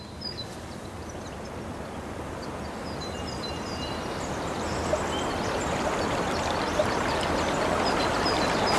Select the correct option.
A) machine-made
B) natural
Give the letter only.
B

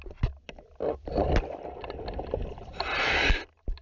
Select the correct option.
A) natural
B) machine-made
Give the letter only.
A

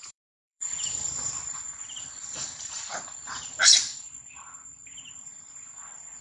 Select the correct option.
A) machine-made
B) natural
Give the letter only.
A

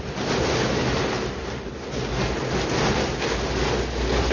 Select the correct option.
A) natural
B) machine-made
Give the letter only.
A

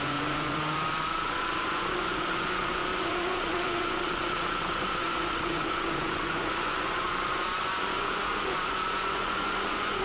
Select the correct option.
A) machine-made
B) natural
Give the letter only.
A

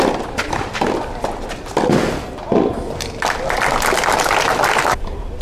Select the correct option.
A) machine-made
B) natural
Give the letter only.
B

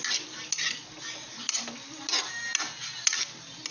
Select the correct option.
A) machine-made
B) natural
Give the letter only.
B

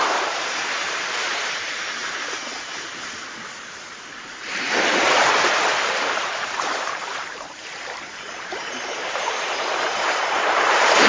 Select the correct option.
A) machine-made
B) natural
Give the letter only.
A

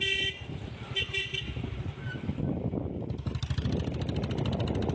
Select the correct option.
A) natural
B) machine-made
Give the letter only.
A